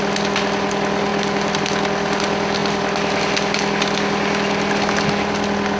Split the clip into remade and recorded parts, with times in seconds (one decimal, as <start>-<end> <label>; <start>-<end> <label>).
0.0-5.8 recorded